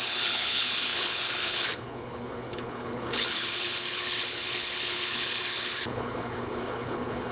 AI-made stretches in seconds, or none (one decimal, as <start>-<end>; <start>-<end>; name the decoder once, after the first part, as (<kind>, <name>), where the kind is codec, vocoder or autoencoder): 0.0-7.3 (codec, HILCodec)